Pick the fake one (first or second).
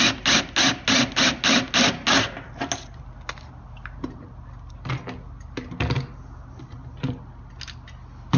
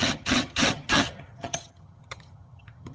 second